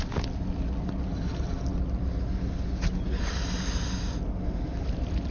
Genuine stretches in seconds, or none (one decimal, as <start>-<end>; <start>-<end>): 0.0-5.3